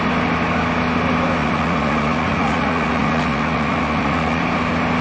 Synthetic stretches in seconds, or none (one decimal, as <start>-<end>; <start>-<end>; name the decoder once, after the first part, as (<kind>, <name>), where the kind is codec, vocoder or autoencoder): 1.4-4.4 (vocoder, Vocos)